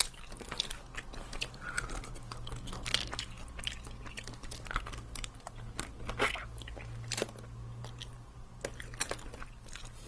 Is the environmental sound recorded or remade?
recorded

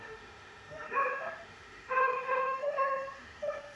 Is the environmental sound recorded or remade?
remade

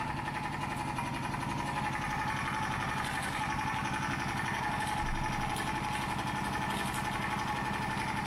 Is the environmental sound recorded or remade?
recorded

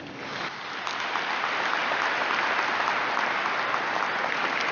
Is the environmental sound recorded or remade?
recorded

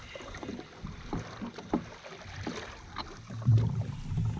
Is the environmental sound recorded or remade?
recorded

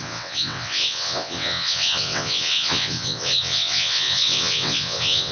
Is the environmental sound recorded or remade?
remade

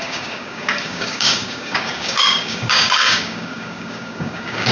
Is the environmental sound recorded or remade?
remade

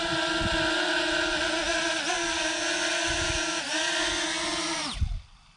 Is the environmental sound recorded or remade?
recorded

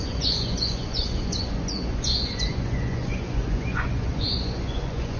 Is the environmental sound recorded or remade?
remade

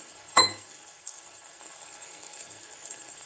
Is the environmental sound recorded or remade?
remade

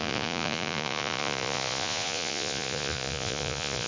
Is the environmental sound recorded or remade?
remade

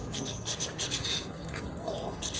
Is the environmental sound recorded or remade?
remade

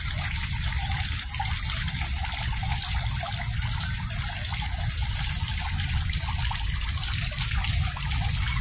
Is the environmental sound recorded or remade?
recorded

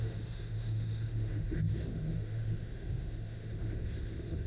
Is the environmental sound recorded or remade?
remade